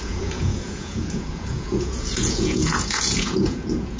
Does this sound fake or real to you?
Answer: fake